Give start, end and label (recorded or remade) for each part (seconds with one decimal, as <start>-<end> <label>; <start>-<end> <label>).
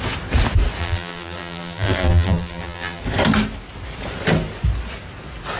0.0-0.8 recorded; 0.8-3.0 remade; 3.0-5.6 recorded